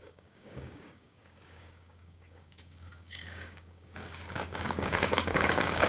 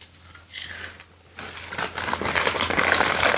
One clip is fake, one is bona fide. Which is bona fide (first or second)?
second